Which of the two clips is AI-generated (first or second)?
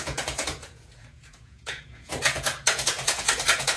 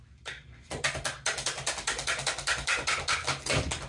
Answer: first